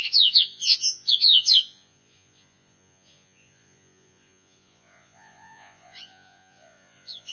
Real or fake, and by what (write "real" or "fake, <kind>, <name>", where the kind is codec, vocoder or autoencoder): fake, vocoder, Vocos